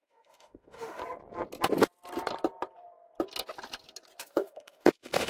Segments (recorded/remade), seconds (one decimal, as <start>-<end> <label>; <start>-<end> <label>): 0.0-1.0 remade; 1.0-4.2 recorded; 4.2-5.3 remade